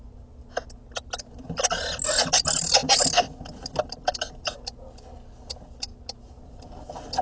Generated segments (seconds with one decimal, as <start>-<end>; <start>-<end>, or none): none